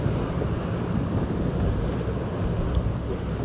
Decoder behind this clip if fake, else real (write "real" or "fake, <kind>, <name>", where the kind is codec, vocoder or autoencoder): real